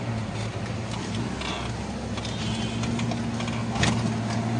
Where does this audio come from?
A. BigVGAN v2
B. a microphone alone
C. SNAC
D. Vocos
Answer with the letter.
B